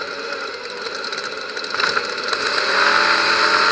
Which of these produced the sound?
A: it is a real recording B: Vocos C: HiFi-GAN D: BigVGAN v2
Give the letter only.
A